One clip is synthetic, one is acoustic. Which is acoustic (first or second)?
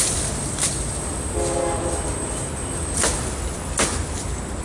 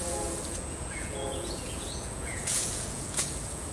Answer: first